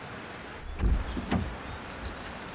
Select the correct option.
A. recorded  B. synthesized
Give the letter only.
A